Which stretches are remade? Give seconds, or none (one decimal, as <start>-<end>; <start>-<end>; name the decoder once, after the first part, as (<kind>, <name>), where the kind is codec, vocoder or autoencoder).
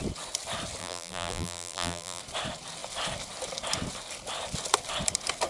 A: 0.8-2.2 (vocoder, BigVGAN v2)